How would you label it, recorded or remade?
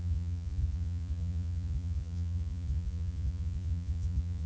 remade